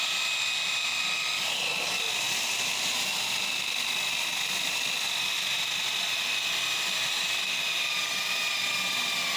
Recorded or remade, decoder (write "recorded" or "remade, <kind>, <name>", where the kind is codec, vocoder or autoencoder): recorded